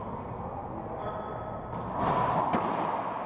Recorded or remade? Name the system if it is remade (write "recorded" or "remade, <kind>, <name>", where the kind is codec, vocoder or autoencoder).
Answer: recorded